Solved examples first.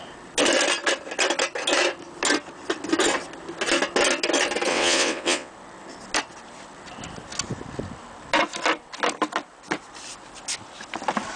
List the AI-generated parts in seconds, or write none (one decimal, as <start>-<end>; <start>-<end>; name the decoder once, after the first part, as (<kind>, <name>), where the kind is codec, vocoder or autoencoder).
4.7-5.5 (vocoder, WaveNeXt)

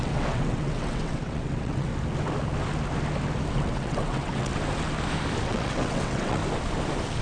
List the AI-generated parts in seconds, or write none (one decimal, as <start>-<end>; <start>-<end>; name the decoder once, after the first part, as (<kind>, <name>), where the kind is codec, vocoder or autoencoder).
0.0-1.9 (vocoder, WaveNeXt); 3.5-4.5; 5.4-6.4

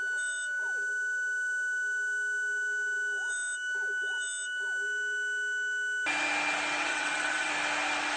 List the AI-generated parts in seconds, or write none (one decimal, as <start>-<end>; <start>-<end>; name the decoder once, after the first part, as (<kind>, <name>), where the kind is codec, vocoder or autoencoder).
6.9-7.5 (vocoder, WaveNeXt)